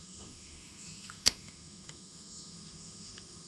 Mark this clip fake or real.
fake